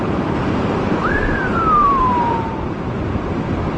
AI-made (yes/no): yes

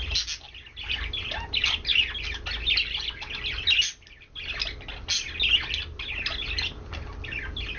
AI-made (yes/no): no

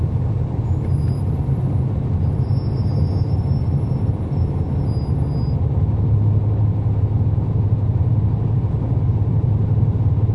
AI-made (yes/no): no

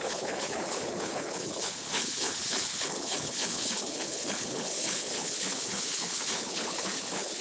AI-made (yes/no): yes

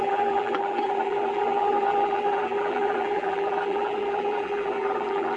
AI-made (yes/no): yes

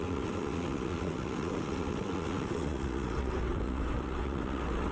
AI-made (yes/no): yes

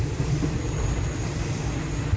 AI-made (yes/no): no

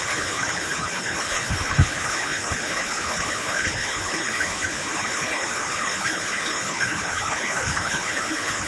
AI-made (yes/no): yes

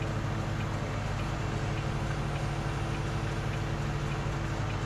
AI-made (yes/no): no